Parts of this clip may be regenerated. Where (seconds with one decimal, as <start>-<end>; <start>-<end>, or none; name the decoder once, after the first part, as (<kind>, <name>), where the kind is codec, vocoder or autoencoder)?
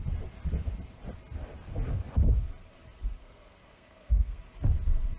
3.2-4.4 (codec, SNAC)